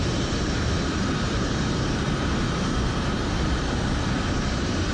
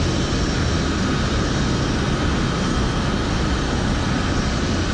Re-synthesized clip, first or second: first